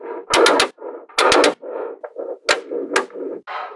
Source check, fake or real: real